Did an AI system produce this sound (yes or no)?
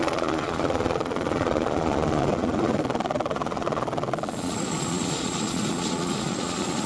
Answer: yes